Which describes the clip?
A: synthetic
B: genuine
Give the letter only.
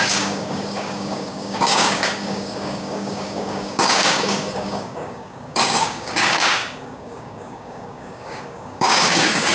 A